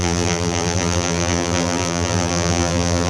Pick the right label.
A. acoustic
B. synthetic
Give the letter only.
B